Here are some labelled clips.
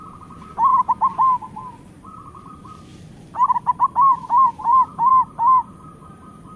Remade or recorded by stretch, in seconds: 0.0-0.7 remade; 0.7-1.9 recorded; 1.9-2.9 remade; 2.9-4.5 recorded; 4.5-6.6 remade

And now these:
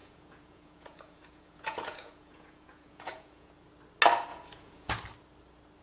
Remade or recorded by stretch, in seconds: 0.0-3.5 remade; 3.5-4.3 recorded; 4.3-4.9 remade; 4.9-5.8 recorded

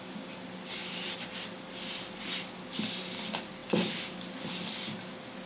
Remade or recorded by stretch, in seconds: 0.0-0.8 recorded; 0.8-1.3 remade; 1.3-5.5 recorded